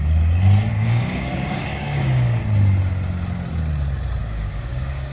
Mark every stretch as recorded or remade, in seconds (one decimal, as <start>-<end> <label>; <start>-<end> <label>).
0.0-0.7 recorded; 0.7-2.4 remade; 2.4-4.2 recorded; 4.2-5.1 remade